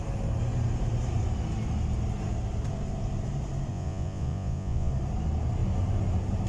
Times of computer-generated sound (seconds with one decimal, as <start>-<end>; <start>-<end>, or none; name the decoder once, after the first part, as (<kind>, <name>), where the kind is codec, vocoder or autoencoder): 3.7-4.9 (vocoder, Vocos)